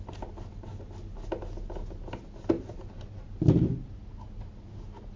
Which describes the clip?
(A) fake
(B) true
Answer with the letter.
B